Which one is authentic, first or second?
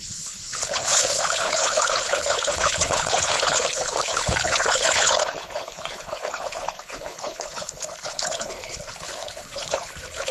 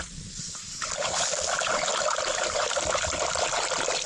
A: second